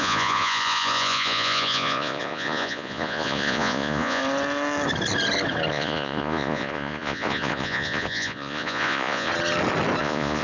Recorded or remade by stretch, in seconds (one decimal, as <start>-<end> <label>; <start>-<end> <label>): 0.0-4.2 remade; 4.2-5.7 recorded; 5.7-9.3 remade; 9.3-10.0 recorded; 10.0-10.4 remade